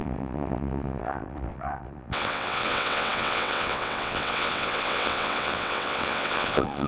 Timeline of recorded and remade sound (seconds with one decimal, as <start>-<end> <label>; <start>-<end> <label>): 0.0-6.9 remade